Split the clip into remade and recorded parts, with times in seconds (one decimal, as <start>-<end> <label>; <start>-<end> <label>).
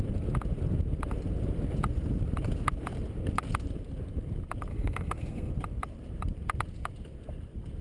0.0-4.7 recorded; 4.7-5.5 remade; 5.5-7.8 recorded